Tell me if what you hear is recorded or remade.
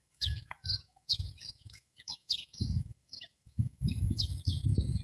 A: remade